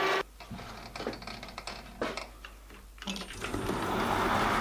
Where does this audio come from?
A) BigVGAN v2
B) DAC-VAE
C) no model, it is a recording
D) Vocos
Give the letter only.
C